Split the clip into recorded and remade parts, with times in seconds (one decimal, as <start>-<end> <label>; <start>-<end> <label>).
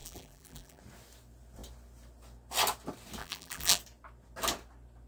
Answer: 0.0-0.8 remade; 0.8-3.2 recorded; 3.2-3.8 remade; 3.8-5.1 recorded